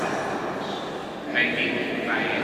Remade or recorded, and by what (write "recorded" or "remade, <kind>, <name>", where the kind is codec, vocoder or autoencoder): recorded